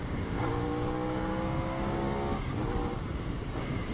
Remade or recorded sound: remade